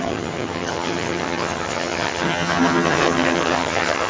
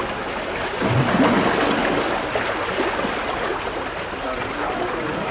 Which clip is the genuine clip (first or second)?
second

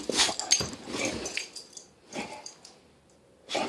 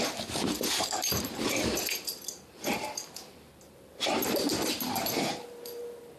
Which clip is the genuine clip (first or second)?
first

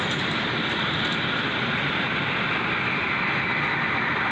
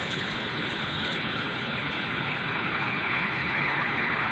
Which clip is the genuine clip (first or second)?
first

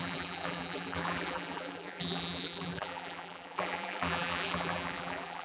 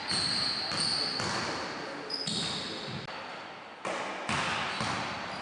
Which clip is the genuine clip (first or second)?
second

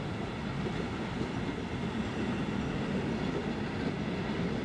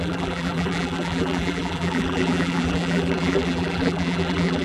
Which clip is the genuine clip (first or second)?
first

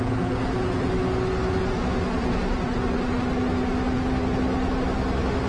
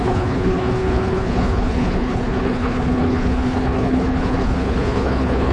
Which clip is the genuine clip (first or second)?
first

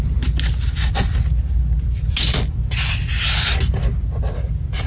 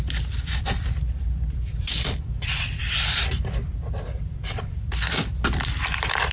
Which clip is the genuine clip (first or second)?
first